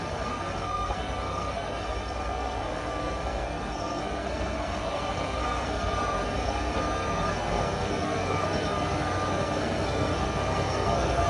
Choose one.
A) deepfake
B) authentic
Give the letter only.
A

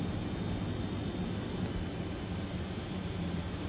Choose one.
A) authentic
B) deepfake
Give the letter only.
A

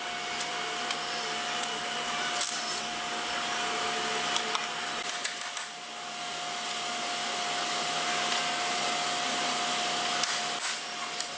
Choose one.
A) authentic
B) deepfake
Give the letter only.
A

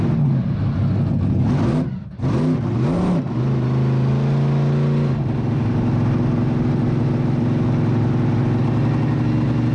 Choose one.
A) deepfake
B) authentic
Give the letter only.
B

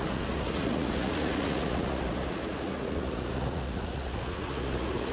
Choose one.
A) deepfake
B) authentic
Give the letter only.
A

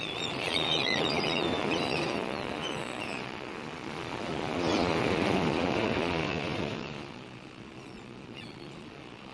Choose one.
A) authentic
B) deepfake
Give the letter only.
B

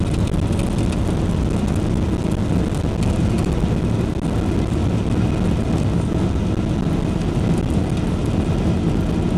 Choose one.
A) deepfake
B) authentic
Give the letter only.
B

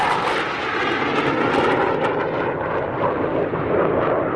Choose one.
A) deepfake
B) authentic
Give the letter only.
B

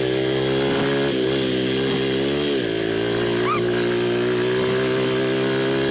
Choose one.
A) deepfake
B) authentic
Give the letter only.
B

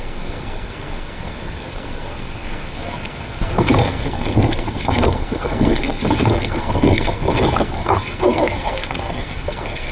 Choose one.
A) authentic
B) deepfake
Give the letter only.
B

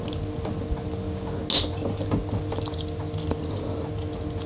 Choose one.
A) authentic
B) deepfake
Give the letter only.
A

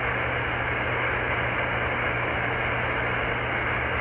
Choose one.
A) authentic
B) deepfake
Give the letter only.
A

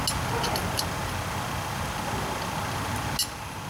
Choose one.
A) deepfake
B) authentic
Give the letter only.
B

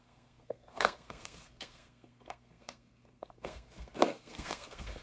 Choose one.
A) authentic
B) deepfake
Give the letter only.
B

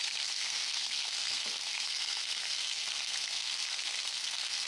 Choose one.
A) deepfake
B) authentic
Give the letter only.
A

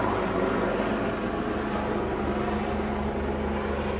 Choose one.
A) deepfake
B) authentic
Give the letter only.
B